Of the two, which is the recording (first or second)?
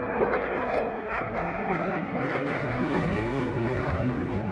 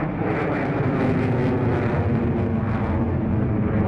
second